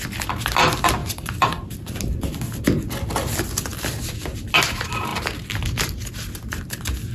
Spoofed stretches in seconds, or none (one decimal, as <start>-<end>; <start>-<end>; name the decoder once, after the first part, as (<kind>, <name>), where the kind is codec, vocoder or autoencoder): 1.0-1.7 (vocoder, BigVGAN v2)